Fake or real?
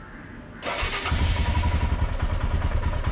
real